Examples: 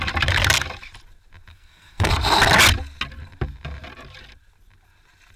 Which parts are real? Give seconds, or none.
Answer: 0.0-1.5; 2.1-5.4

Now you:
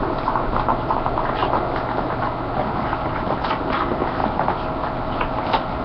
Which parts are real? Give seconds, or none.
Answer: 0.0-5.8

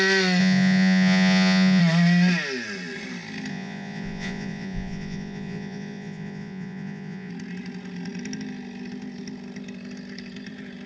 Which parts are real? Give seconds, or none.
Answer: 0.0-0.4; 1.8-3.5; 7.3-10.9

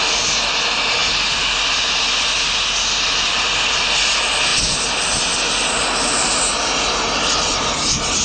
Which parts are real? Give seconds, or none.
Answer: 0.0-8.2

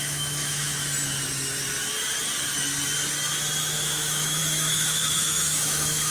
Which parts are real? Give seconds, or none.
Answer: 0.8-3.6

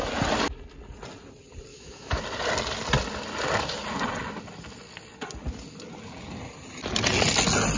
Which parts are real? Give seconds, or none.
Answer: 0.0-1.7; 2.2-7.8